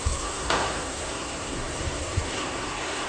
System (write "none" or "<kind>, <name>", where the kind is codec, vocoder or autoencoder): codec, SNAC